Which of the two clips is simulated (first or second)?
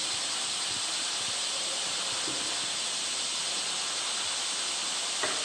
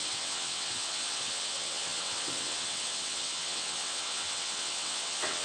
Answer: second